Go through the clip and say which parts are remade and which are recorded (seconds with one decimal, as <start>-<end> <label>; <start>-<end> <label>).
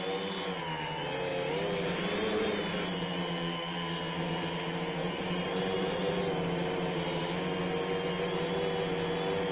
0.0-5.0 recorded; 5.0-6.1 remade; 6.1-9.5 recorded